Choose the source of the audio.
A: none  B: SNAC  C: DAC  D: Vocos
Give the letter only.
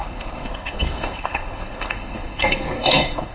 B